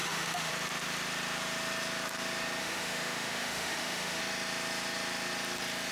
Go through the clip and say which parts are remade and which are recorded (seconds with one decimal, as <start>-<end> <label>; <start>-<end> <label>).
0.0-0.5 remade; 0.5-2.6 recorded; 2.6-4.2 remade; 4.2-5.9 recorded